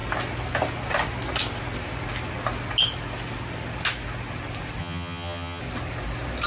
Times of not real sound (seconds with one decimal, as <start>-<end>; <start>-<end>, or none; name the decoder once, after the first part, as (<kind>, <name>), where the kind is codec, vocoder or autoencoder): 4.8-5.6 (vocoder, HiFi-GAN)